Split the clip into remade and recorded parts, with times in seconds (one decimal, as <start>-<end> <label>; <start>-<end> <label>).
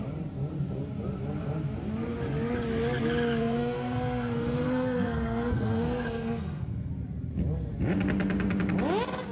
0.0-3.4 recorded; 3.4-6.9 remade; 6.9-9.3 recorded